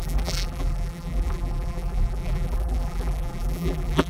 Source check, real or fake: fake